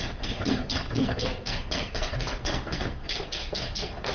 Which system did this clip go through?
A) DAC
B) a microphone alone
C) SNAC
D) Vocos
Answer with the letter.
C